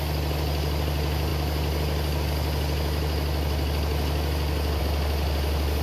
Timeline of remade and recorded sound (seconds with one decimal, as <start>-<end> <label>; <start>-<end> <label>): 0.0-5.8 recorded